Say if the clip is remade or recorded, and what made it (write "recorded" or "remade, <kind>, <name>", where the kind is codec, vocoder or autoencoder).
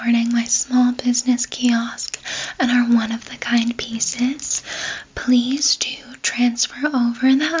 recorded